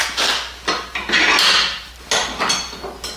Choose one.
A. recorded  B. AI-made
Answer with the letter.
A